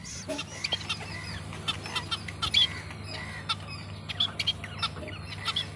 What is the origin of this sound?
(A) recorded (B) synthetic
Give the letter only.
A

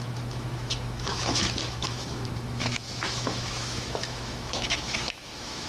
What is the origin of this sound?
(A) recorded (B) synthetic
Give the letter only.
B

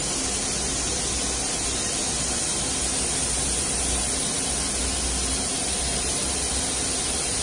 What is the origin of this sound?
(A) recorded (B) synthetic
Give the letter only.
A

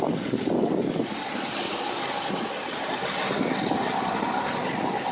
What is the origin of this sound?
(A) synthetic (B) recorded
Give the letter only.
B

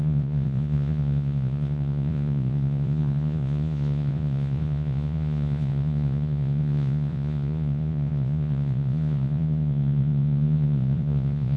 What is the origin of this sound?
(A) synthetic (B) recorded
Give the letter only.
A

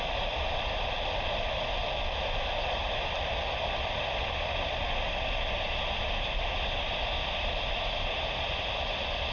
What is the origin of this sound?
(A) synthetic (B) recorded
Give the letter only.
B